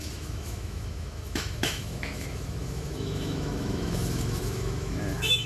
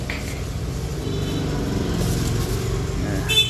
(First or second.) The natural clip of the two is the second